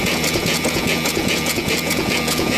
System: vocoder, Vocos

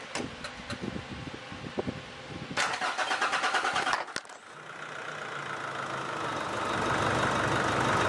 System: none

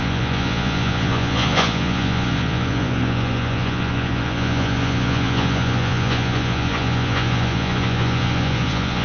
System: vocoder, Vocos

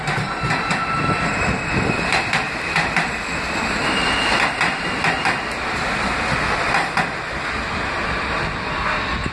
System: none